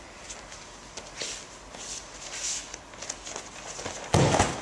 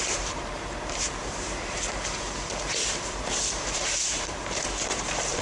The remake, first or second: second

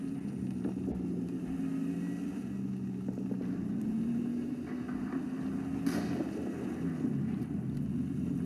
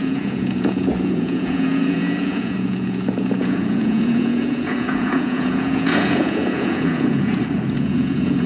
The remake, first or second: second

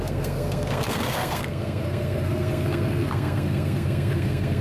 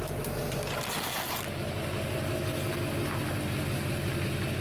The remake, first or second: first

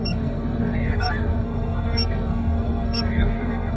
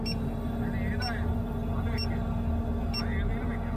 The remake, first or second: first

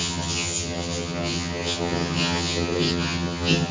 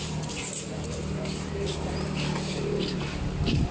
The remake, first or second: first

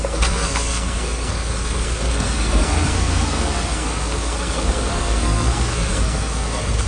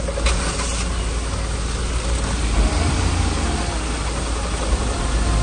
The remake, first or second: first